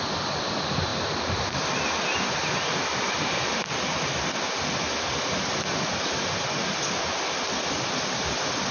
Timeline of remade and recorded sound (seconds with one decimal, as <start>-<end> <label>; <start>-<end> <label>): 0.0-8.7 recorded